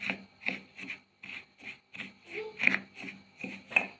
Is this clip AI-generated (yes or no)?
no